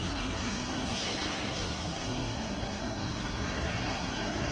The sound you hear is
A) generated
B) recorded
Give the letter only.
A